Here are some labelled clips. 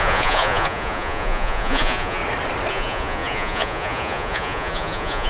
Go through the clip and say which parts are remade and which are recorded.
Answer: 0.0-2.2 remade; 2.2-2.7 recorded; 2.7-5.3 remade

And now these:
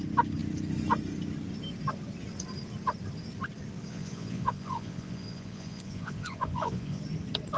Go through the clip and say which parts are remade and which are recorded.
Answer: 0.0-3.9 recorded; 3.9-7.0 remade; 7.0-7.6 recorded